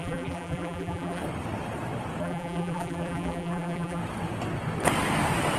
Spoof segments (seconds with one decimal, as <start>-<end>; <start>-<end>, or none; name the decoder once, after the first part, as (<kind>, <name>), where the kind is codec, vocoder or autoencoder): 0.0-1.2 (vocoder, BigVGAN v2); 2.2-4.0